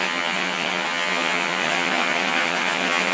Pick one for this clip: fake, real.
fake